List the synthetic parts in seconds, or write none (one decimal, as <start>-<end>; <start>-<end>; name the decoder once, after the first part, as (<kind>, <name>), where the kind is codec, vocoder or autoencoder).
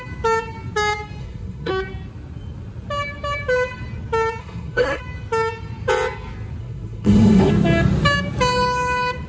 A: 1.2-1.7 (codec, SNAC); 4.4-5.0; 6.6-7.5